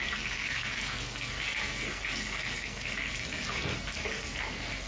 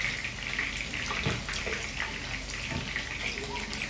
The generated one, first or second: first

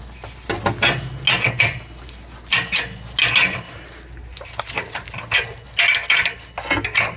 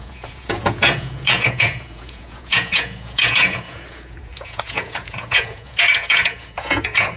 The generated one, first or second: second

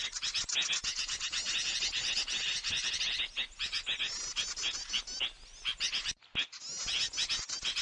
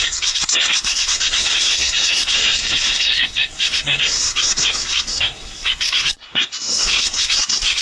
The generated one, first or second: second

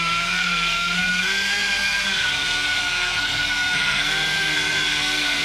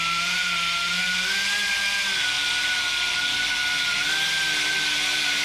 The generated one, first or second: first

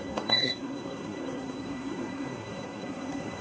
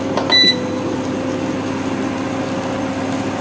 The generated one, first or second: first